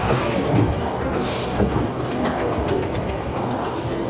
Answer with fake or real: fake